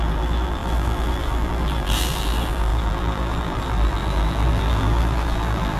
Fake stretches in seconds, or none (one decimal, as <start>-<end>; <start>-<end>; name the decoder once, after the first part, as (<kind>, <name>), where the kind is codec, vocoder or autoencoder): 0.0-5.8 (vocoder, BigVGAN v2)